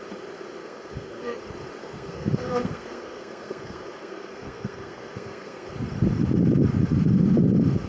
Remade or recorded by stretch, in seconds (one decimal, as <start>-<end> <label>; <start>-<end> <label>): 0.0-0.6 recorded; 0.6-1.4 remade; 1.4-1.8 recorded; 1.8-5.7 remade; 5.7-7.9 recorded